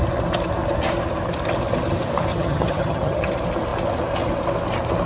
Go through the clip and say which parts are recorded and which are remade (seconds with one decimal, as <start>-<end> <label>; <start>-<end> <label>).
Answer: 0.0-2.3 recorded; 2.3-3.3 remade; 3.3-5.1 recorded